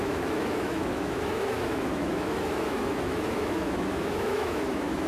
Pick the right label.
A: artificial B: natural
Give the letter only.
A